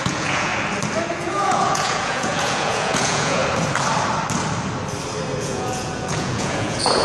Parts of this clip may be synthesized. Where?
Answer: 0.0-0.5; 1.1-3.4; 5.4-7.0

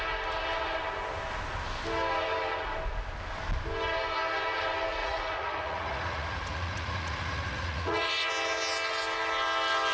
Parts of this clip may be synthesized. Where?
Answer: 5.0-8.3